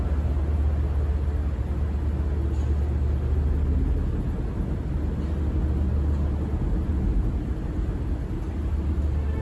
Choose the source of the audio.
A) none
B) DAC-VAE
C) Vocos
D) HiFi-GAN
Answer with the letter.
A